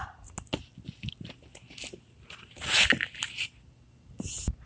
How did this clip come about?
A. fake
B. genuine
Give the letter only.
B